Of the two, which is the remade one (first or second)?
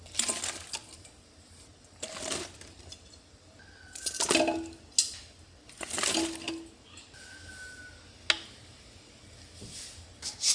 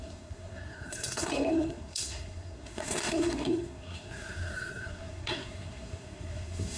second